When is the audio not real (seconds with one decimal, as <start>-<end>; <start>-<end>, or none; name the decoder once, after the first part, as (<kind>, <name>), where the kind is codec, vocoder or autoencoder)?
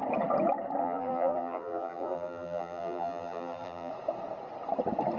0.8-3.9 (vocoder, BigVGAN v2)